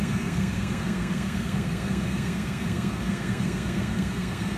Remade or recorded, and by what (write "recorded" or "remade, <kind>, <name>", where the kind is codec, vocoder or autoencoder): remade, codec, SNAC